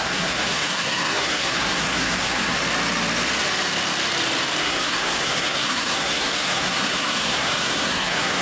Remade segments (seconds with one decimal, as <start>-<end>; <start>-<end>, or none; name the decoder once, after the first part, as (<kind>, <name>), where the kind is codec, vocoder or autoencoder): 0.0-2.6 (codec, SNAC); 4.6-8.4

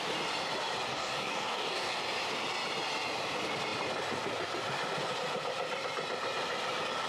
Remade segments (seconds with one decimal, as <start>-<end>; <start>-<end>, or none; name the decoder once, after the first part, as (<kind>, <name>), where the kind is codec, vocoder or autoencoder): 0.9-2.0 (codec, DAC)

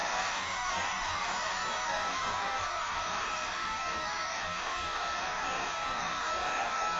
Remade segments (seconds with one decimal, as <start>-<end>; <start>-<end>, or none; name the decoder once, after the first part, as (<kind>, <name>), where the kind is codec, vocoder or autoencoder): 0.0-7.0 (codec, DAC)

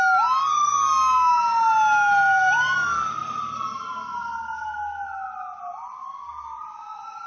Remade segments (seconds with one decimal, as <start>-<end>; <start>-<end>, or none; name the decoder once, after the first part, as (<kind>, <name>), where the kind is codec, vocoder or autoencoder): none

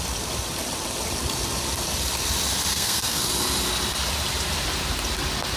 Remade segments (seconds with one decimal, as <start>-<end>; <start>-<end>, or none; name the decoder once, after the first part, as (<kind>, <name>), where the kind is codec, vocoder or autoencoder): 2.7-3.2 (codec, SNAC)

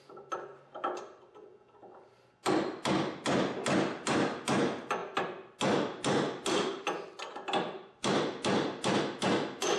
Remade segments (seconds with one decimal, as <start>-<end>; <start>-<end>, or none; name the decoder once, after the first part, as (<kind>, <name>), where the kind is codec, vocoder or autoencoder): none